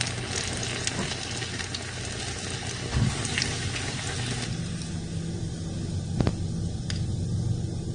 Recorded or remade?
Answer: recorded